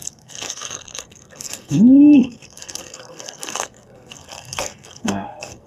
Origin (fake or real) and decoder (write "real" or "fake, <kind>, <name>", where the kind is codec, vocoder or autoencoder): fake, codec, SNAC